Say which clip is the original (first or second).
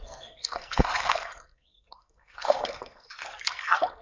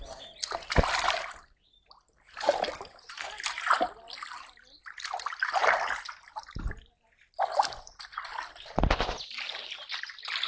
second